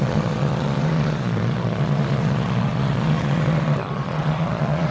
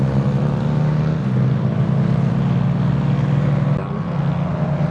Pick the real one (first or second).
second